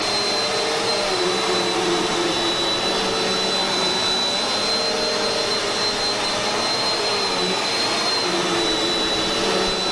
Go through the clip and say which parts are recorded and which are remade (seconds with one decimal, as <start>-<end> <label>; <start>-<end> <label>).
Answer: 0.0-9.9 recorded